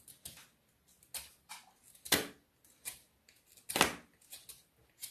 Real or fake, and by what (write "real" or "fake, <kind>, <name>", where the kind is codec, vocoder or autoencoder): real